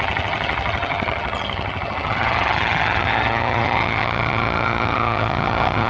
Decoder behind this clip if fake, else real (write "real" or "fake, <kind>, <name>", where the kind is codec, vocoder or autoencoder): fake, vocoder, HiFi-GAN